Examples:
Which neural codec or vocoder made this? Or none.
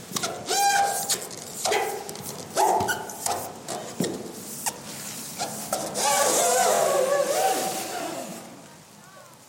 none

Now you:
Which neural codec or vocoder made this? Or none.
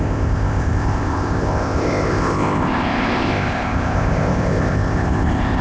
codec, ZipCodec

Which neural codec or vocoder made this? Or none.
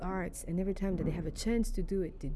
none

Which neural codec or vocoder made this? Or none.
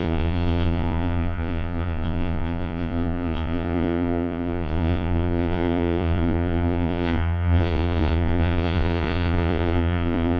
vocoder, Vocos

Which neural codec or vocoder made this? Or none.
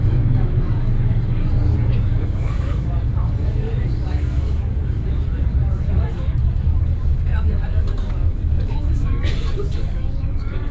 codec, DAC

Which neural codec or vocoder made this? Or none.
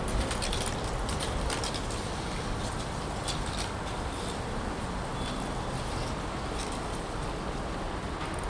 none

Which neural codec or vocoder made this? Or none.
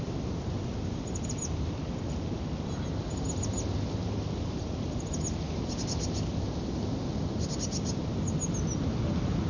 none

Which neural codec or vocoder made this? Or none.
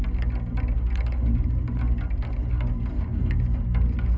none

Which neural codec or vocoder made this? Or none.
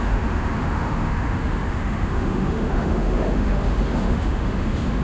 autoencoder, DAC-VAE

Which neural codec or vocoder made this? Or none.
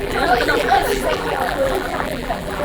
vocoder, BigVGAN v2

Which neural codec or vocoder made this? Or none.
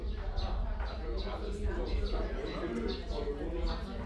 none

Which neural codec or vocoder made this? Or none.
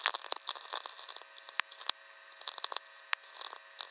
none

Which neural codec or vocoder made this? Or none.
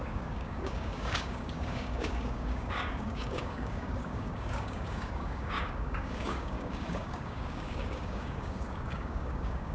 codec, DAC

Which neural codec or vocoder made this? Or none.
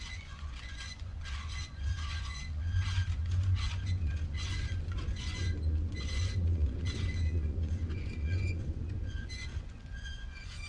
vocoder, Vocos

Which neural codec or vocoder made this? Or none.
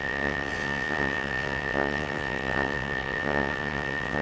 vocoder, WaveNeXt